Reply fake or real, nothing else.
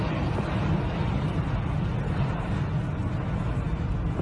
real